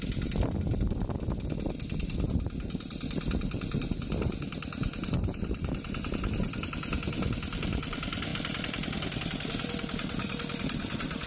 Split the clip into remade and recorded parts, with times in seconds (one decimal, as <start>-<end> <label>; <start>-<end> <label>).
0.0-4.8 recorded; 4.8-6.1 remade; 6.1-11.3 recorded